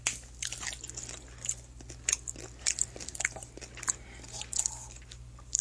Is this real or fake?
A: real